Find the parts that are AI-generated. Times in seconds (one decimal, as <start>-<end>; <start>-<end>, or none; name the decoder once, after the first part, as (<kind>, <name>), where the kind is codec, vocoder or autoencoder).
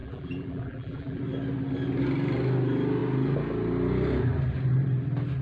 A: 0.0-1.2 (vocoder, BigVGAN v2)